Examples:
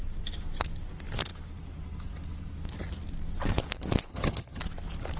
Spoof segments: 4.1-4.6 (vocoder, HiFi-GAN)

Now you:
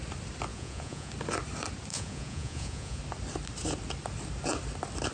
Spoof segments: 0.5-1.1 (vocoder, Vocos); 1.9-3.0

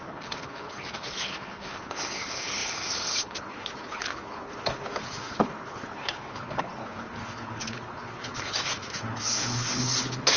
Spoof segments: 0.0-10.4 (codec, HILCodec)

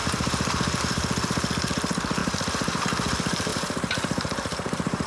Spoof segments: 0.0-0.8 (vocoder, BigVGAN v2); 2.2-2.8; 3.5-5.1

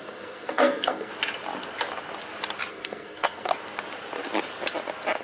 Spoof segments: 0.0-1.1 (codec, SNAC); 2.7-3.5